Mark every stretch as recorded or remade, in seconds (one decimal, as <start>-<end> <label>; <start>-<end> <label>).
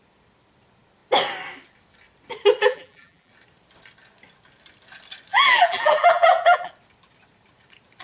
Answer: 0.0-2.6 recorded; 2.6-3.3 remade; 3.3-5.3 recorded; 5.3-6.7 remade; 6.7-8.0 recorded